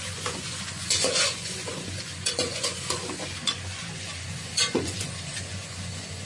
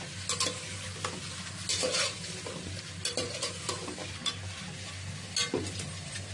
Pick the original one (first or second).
second